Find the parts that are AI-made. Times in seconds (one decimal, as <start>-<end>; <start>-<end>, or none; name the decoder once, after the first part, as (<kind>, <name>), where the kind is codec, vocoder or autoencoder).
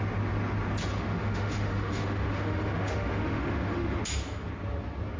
0.9-4.0 (autoencoder, DAC-VAE)